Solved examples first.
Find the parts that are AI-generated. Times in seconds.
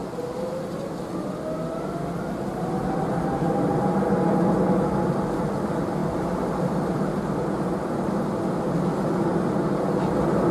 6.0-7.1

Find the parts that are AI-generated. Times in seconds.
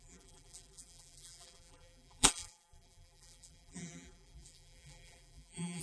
0.0-5.8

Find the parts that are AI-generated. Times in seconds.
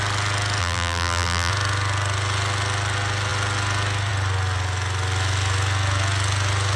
0.6-1.5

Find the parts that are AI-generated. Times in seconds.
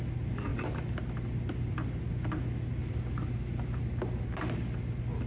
none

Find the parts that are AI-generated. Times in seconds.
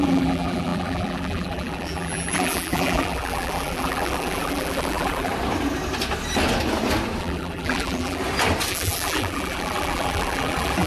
0.0-5.3; 7.2-8.2; 8.7-10.9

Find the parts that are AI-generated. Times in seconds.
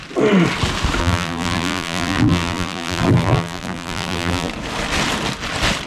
1.0-4.5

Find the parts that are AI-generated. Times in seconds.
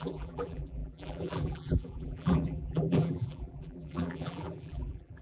0.0-5.2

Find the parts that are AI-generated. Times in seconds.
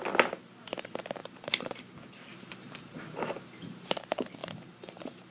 1.2-1.7; 2.3-3.9; 4.4-5.3